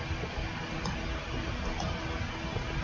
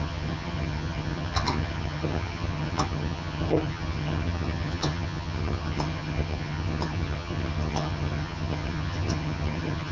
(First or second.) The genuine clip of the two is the first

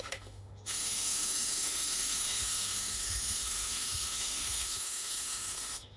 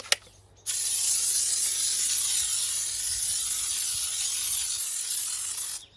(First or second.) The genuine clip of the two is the second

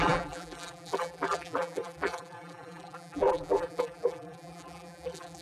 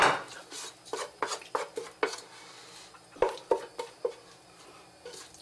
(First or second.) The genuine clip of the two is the second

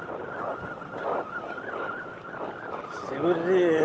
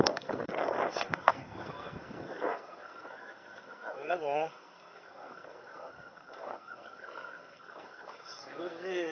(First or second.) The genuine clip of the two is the first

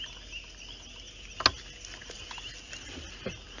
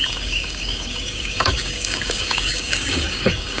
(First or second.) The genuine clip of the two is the first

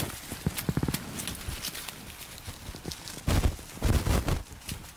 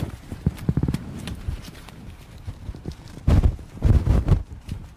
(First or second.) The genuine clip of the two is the first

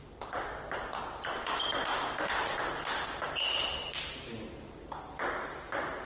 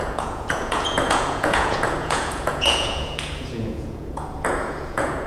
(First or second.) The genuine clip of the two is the first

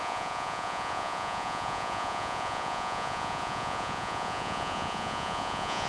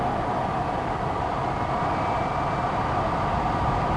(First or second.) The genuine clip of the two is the second